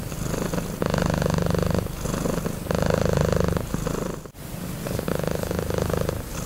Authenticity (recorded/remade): recorded